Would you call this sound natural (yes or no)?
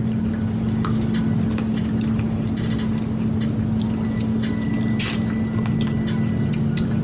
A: yes